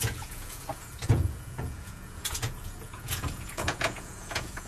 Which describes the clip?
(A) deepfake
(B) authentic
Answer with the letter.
A